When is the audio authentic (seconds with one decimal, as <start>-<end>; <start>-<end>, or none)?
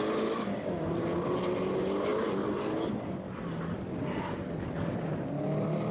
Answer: 0.0-5.9